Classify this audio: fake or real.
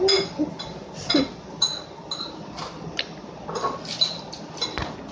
real